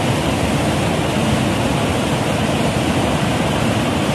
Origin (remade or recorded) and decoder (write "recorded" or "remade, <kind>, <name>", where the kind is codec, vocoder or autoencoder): recorded